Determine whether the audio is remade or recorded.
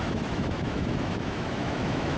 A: remade